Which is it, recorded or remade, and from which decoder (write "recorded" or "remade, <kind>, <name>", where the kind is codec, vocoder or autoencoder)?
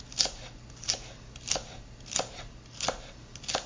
recorded